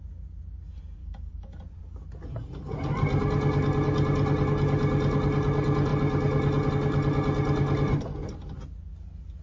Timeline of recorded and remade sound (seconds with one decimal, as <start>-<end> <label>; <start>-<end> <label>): 0.0-1.0 recorded; 1.0-1.6 remade; 1.6-9.4 recorded